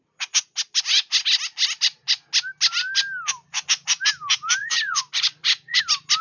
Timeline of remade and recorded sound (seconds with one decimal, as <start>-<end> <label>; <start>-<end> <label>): 0.0-4.6 recorded; 4.6-5.8 remade; 5.8-6.2 recorded